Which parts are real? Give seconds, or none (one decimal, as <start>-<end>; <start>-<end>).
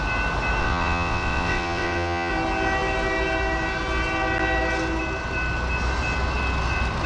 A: 0.0-0.6; 2.3-7.1